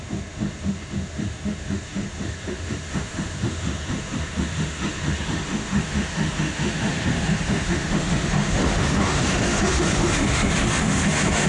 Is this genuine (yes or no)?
no